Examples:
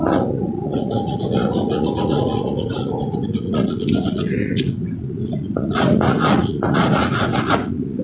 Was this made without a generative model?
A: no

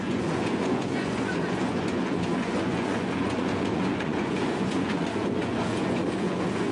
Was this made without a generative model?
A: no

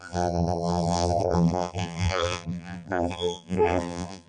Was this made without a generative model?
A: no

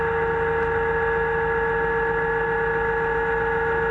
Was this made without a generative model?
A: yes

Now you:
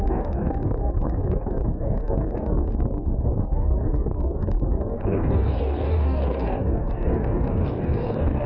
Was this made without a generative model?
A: no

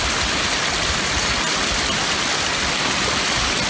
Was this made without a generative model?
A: no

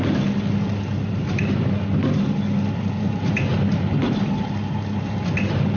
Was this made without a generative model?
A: yes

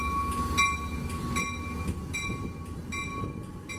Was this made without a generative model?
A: yes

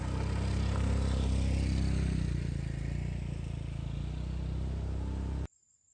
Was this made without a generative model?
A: yes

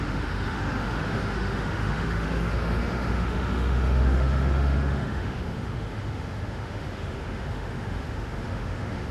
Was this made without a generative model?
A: no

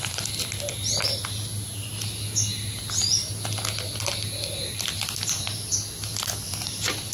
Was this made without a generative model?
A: yes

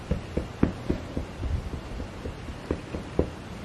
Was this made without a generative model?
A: yes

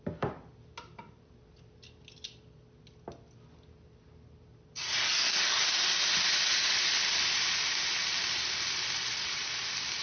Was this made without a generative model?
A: yes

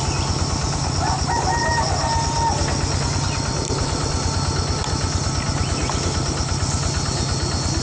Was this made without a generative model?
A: yes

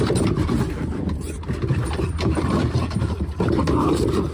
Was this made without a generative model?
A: no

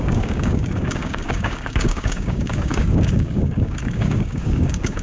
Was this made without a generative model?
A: no